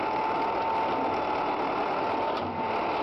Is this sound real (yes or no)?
yes